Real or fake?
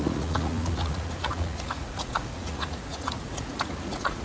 fake